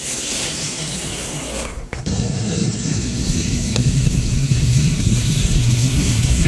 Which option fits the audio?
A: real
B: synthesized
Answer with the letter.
B